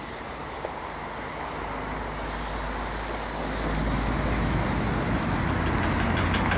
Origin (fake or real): real